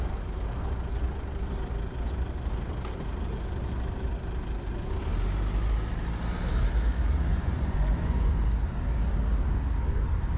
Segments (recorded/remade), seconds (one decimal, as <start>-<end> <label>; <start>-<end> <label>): 0.0-7.3 recorded; 7.3-8.3 remade; 8.3-10.4 recorded